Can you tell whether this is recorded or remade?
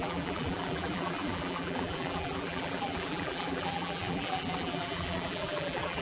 remade